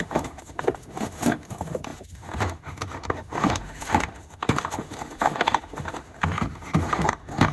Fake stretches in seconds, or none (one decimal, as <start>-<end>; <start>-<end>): 0.0-7.5